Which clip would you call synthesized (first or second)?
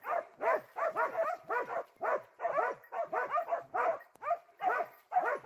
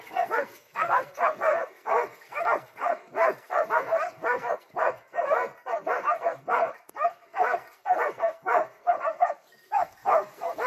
second